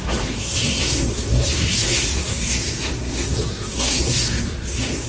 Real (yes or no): no